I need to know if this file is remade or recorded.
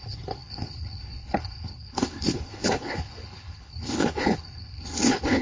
remade